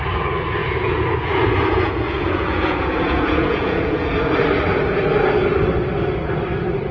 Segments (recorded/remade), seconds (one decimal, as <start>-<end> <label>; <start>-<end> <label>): 0.0-0.6 recorded; 0.6-4.1 remade; 4.1-6.9 recorded